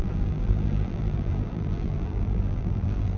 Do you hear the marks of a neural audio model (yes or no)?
yes